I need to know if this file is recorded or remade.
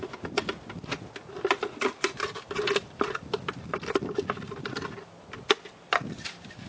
recorded